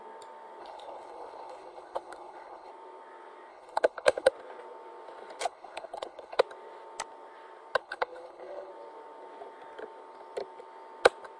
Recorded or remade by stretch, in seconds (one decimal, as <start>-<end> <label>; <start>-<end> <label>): 0.0-0.6 recorded; 0.6-2.7 remade; 2.7-3.5 recorded; 3.5-4.3 remade; 4.3-5.4 recorded; 5.4-6.4 remade; 6.4-7.8 recorded; 7.8-8.7 remade; 8.7-11.4 recorded